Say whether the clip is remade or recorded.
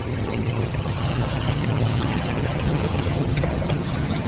remade